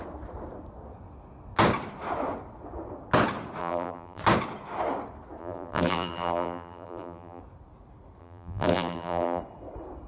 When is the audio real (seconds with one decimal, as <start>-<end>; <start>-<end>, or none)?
0.0-3.6; 4.2-5.4; 7.4-8.2; 9.4-10.1